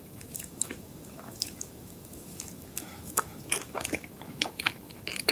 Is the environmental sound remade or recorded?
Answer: remade